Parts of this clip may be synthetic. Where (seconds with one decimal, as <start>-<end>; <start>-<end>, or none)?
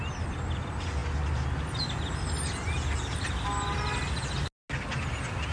none